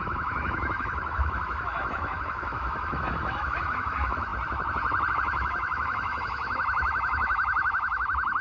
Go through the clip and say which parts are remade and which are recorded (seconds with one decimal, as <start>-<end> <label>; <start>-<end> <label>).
0.0-4.3 remade; 4.3-5.1 recorded; 5.1-8.4 remade